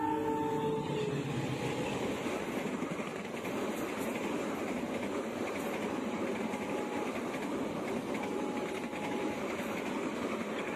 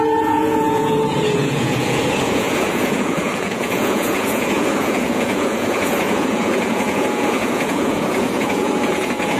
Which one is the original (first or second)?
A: first